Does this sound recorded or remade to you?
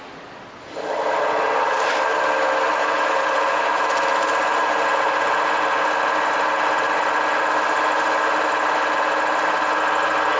recorded